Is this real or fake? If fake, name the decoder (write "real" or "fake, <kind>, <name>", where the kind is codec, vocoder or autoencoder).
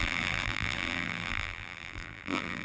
fake, vocoder, BigVGAN v2